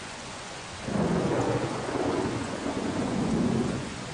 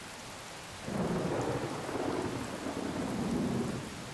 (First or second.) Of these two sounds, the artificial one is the first